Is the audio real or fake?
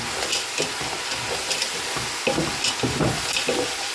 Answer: real